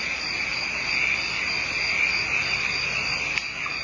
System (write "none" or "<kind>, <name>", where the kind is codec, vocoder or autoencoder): none